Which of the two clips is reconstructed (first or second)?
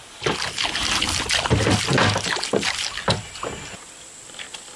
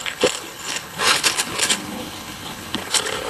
second